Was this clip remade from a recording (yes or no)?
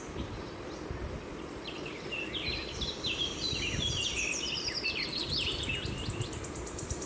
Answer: yes